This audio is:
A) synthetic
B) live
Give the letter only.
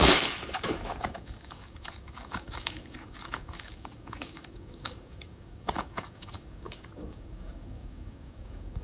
A